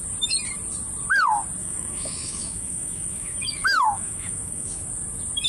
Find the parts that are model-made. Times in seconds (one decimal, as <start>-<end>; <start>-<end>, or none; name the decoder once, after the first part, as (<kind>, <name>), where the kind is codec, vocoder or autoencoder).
1.6-4.9 (autoencoder, DAC-VAE)